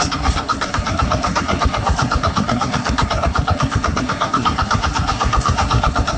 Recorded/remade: remade